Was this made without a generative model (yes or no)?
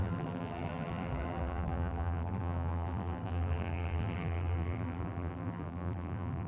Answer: no